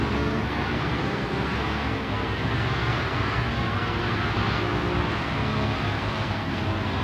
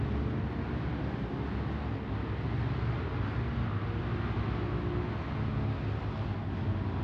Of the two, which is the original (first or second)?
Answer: second